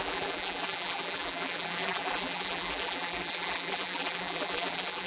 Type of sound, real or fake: fake